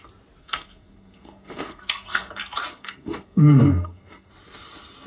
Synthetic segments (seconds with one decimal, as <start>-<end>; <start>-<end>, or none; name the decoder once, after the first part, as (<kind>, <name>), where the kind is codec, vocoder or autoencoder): 0.4-2.3 (codec, SNAC); 2.7-4.3